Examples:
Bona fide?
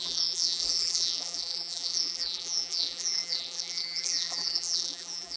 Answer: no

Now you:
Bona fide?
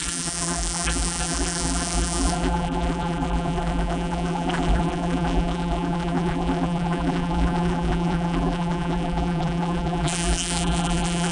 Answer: no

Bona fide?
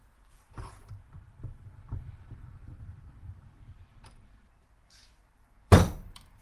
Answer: no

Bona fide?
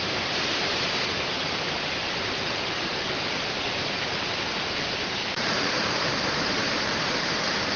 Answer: no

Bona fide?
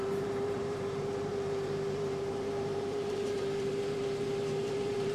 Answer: no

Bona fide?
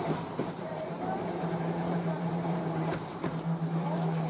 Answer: no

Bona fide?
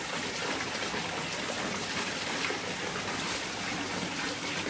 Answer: yes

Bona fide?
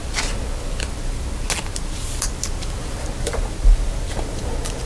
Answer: yes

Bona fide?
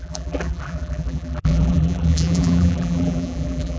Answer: no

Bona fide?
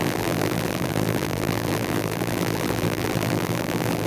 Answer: no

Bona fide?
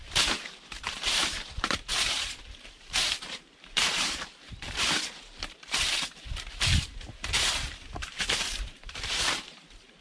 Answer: no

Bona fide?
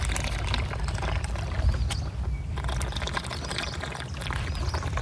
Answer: yes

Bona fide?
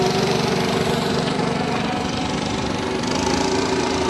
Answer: no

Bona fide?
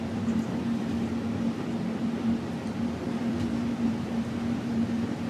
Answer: no